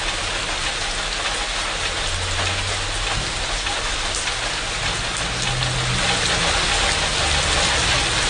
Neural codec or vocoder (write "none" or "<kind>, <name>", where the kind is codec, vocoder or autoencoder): none